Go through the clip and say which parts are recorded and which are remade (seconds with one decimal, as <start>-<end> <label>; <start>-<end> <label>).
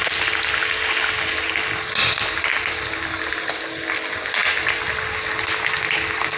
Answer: 0.0-6.4 recorded